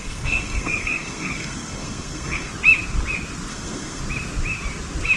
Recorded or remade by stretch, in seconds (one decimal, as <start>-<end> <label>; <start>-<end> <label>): 0.0-2.5 remade; 2.5-3.5 recorded; 3.5-4.0 remade; 4.0-5.2 recorded